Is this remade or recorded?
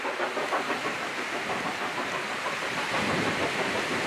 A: recorded